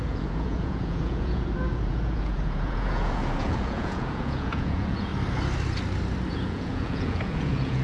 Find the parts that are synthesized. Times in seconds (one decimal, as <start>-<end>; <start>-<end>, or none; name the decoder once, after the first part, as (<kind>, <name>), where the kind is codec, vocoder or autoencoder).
0.0-5.1 (vocoder, Vocos); 6.3-7.8